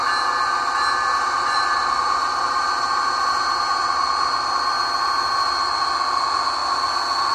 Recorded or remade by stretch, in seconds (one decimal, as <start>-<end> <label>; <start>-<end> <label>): 0.0-1.1 recorded; 1.1-4.0 remade; 4.0-7.3 recorded